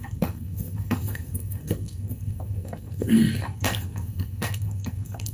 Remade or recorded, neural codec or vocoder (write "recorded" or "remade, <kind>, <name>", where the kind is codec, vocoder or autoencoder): remade, codec, SNAC